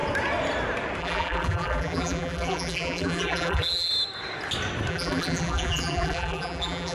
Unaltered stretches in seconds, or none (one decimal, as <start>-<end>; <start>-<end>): 0.0-1.0; 3.9-4.9